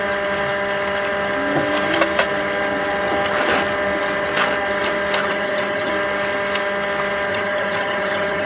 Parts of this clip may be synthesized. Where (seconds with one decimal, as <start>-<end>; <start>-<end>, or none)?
5.2-5.9; 7.3-8.5